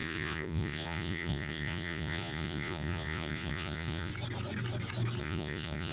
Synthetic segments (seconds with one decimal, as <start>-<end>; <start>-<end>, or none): 0.0-4.1; 5.2-5.9